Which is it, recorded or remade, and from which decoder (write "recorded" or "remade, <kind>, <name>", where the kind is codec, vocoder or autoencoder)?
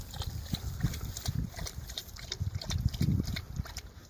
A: recorded